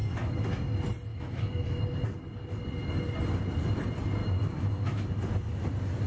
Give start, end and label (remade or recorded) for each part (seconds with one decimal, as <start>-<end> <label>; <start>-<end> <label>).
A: 0.0-0.7 remade; 0.7-1.1 recorded; 1.1-1.8 remade; 1.8-4.2 recorded; 4.2-5.1 remade; 5.1-6.1 recorded